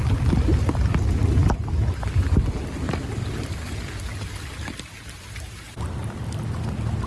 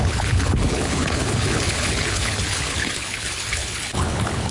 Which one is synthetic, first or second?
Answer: second